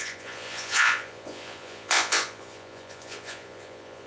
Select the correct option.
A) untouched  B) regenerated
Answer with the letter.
B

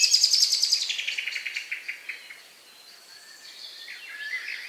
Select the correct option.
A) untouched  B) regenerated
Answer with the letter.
A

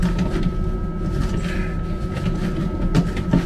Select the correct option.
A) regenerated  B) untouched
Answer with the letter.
B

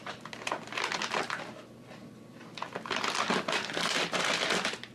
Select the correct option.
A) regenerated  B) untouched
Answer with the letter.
B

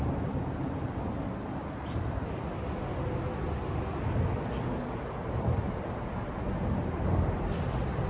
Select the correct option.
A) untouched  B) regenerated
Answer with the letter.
A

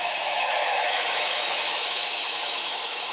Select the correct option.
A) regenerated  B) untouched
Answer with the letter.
A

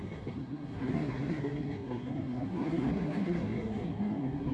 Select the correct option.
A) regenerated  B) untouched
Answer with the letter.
A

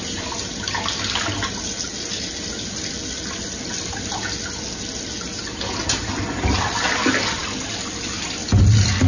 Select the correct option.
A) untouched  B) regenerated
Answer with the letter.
A